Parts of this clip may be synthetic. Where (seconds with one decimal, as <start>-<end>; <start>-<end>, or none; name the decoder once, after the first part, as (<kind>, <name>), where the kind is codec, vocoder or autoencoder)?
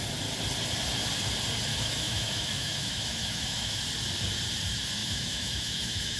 1.7-3.8 (autoencoder, DAC-VAE); 5.0-6.2